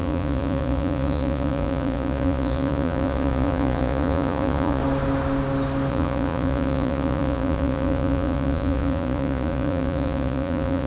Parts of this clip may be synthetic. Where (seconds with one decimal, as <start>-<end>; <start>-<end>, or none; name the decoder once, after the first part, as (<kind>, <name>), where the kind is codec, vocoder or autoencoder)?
0.0-4.8 (vocoder, Vocos); 5.9-10.9